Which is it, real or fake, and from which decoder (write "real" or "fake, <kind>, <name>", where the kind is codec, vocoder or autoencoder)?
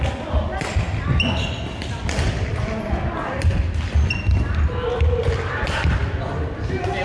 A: real